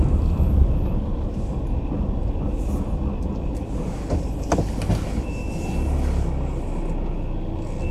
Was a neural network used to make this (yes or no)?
no